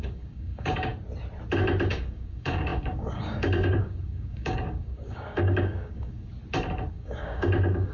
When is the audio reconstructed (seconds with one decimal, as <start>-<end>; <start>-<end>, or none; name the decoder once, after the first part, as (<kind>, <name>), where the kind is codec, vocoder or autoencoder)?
0.0-0.9 (codec, DAC); 1.9-6.3; 6.9-7.9

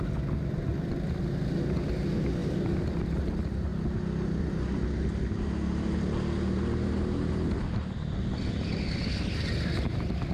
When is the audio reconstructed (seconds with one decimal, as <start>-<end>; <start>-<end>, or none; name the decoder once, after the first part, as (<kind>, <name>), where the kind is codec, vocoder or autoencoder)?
0.7-1.2 (vocoder, BigVGAN v2); 2.4-3.3

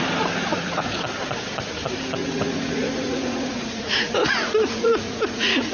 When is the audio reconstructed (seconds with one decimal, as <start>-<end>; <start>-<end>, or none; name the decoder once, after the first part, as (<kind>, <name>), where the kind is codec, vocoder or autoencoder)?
0.5-1.0 (vocoder, Vocos); 2.2-5.7

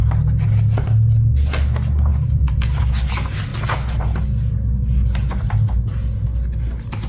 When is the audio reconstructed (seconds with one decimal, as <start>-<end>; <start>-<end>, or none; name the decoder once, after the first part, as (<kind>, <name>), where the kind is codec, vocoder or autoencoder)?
2.1-2.8 (vocoder, BigVGAN v2); 3.5-4.2

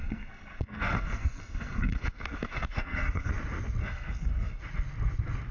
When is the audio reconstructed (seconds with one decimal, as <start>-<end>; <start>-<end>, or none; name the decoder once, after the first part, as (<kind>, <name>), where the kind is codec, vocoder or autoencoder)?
0.0-3.3 (codec, SNAC); 3.8-4.6